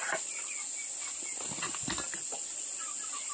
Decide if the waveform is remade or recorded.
recorded